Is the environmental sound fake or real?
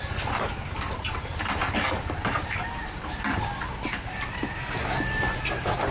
fake